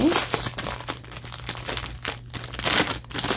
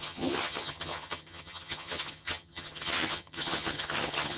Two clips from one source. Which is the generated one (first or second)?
second